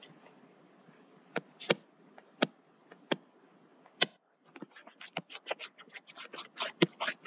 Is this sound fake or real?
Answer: real